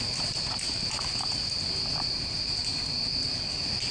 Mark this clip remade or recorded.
recorded